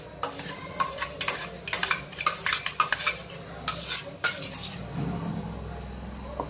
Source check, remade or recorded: recorded